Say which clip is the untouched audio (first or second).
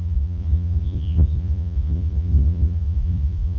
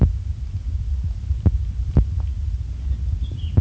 second